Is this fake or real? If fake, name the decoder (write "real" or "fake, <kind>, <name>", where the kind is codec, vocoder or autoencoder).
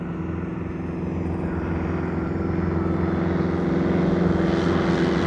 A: real